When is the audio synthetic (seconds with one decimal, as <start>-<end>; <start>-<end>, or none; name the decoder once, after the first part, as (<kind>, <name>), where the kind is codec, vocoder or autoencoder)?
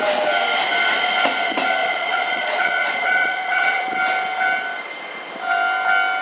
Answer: 1.8-3.9 (vocoder, Vocos)